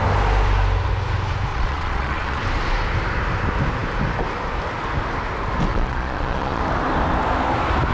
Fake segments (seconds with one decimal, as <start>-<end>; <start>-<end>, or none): 1.5-2.4; 5.7-6.6